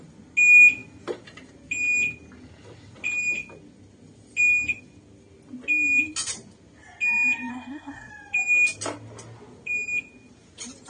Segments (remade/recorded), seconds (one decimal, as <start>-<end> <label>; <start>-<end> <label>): 0.0-7.5 recorded; 7.5-8.1 remade; 8.1-10.9 recorded